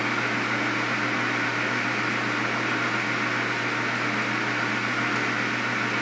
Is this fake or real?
real